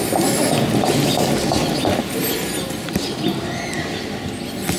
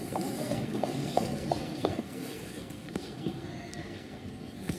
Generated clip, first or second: second